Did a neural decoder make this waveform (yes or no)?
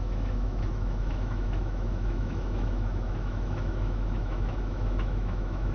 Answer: yes